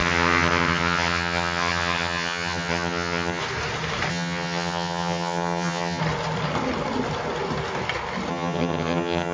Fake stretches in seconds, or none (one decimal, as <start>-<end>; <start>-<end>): 0.0-3.4; 4.1-6.0; 8.3-9.3